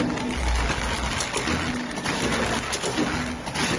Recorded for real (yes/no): yes